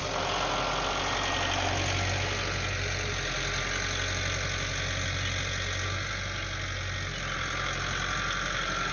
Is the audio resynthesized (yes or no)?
no